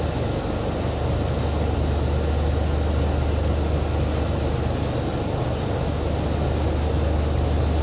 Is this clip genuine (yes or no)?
yes